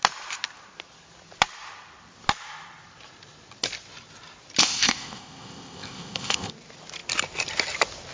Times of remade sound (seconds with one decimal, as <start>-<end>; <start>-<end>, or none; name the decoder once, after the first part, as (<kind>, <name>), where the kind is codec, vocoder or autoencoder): 4.6-6.5 (codec, ZipCodec)

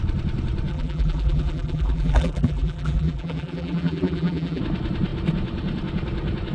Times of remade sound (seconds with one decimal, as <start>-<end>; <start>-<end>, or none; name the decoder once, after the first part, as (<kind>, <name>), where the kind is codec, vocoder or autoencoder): 0.7-4.6 (vocoder, BigVGAN v2)

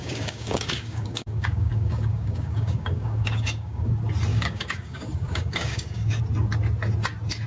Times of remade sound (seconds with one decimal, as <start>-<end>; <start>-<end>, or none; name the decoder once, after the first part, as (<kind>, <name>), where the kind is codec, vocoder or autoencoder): 0.0-3.9 (codec, DAC); 4.3-6.2